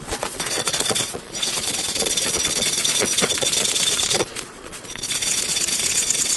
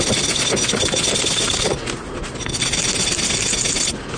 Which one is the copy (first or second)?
first